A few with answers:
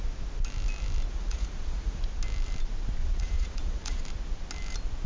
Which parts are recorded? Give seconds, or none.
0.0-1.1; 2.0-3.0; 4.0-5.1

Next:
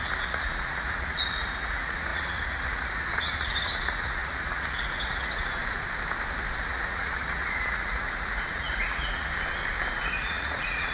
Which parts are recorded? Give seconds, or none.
5.6-6.6; 9.3-9.9

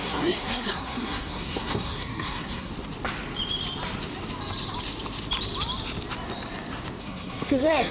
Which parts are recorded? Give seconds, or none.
2.7-7.0

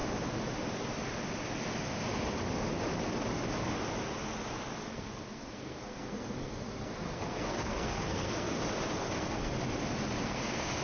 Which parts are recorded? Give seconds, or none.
0.0-4.8; 8.6-9.0; 9.5-10.2

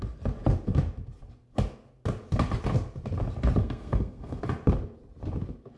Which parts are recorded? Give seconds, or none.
0.0-3.6; 4.4-5.8